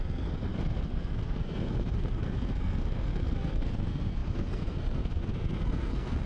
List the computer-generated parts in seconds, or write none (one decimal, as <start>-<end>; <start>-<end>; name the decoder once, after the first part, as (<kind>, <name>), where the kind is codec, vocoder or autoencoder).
0.0-6.3 (codec, SNAC)